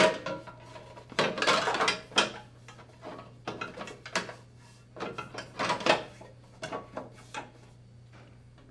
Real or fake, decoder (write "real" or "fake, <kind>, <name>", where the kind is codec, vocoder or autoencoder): real